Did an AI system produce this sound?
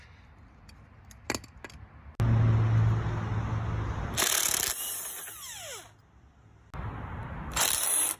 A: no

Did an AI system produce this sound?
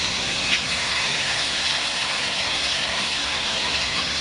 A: yes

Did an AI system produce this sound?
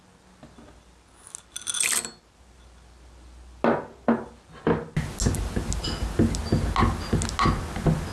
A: no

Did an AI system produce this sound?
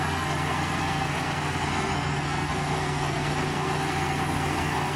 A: yes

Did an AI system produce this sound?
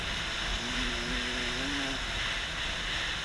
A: no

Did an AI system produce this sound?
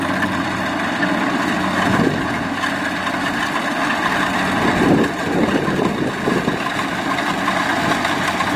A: no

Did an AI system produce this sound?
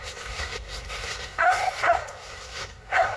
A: yes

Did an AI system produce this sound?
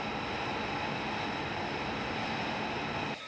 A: no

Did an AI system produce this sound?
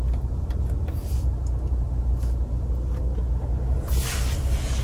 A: no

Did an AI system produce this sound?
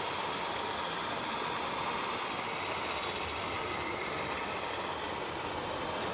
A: no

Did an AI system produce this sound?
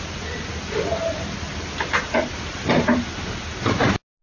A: no